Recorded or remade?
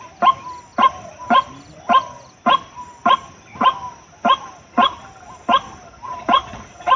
recorded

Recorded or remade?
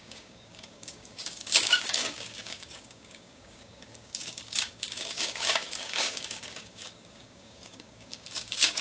remade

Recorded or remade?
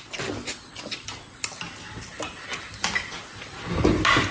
recorded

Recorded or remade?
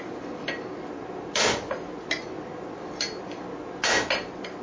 recorded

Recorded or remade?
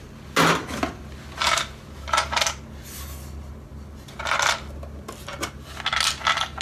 recorded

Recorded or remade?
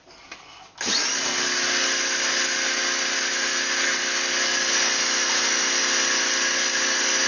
recorded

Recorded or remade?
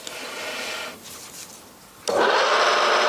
recorded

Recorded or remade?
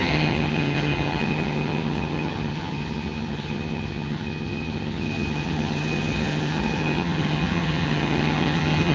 remade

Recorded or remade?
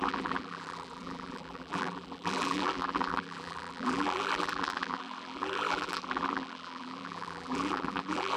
remade